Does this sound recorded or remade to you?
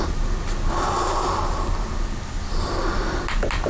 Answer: recorded